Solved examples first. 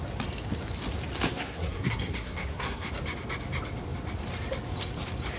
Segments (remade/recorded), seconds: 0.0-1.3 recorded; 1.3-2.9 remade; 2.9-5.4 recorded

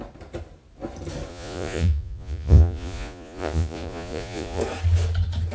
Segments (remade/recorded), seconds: 0.0-1.3 recorded; 1.3-4.6 remade; 4.6-5.5 recorded

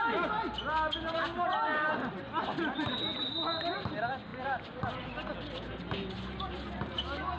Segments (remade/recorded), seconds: 0.0-7.4 recorded

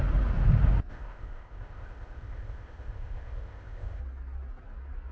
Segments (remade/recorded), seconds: 0.0-0.9 recorded; 0.9-4.0 remade; 4.0-5.1 recorded

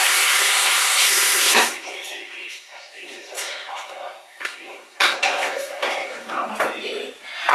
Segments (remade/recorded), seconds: 0.0-6.5 remade; 6.5-7.5 recorded

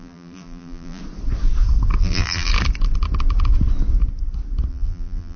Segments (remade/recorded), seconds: 0.0-1.0 remade; 1.0-2.0 recorded; 2.0-2.5 remade; 2.5-4.7 recorded; 4.7-5.4 remade